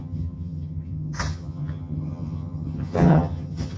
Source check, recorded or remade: remade